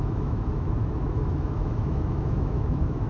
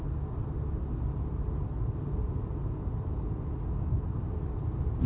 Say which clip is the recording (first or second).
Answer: second